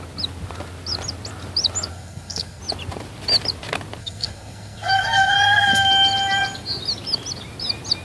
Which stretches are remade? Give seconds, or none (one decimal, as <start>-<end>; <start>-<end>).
1.9-2.6; 4.0-5.9